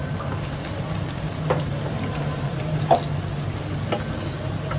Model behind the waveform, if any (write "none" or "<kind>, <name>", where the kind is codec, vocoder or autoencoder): none